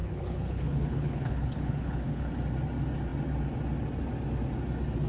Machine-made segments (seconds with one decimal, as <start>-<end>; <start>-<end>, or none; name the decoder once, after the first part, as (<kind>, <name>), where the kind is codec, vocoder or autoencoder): 0.0-2.3 (codec, HILCodec)

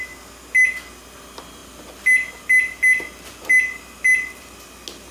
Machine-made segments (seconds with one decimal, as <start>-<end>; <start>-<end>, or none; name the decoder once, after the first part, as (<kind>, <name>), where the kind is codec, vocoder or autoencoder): none